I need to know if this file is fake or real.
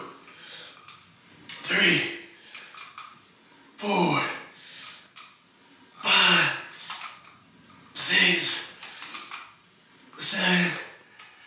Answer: real